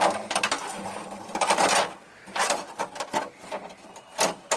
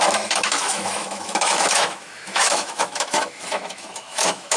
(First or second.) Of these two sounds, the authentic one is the first